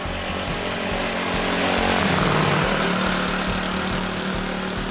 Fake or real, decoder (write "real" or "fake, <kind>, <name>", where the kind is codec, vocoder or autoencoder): real